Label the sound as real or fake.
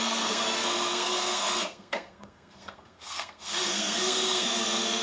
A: fake